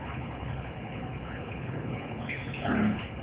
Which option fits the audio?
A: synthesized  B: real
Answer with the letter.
A